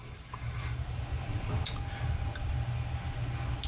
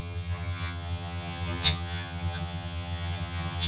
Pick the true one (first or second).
first